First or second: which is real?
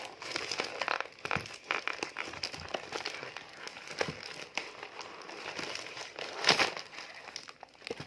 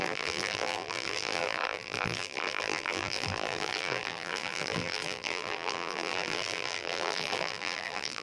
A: first